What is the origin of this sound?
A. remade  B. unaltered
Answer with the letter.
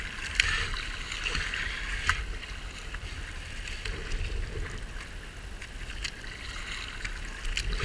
B